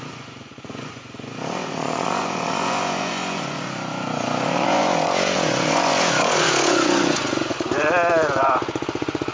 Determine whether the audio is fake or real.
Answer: fake